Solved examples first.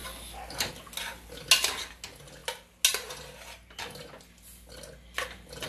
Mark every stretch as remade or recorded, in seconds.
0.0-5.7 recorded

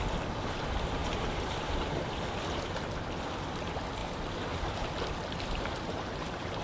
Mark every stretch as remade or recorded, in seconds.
0.0-1.0 recorded; 1.0-2.2 remade; 2.2-4.0 recorded; 4.0-6.6 remade

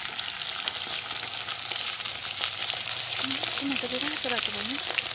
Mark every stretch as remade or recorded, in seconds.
0.0-1.5 recorded; 1.5-2.2 remade; 2.2-2.6 recorded; 2.6-3.3 remade; 3.3-5.1 recorded

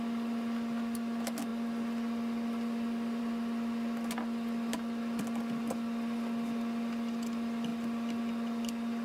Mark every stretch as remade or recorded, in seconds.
0.0-9.0 recorded

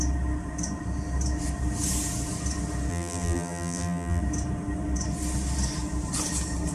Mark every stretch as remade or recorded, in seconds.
0.0-2.9 recorded; 2.9-4.2 remade; 4.2-6.7 recorded

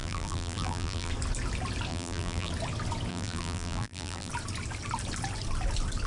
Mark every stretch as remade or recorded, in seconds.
0.0-1.1 remade; 1.1-1.9 recorded; 1.9-2.5 remade; 2.5-3.1 recorded; 3.1-4.3 remade; 4.3-6.1 recorded